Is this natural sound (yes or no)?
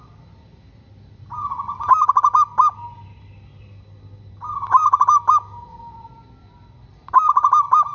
yes